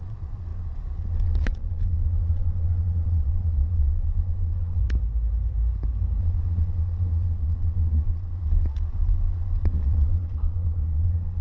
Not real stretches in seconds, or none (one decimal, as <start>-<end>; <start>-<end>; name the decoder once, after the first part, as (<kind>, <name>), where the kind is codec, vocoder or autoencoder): 0.0-4.8 (vocoder, Vocos); 6.2-11.4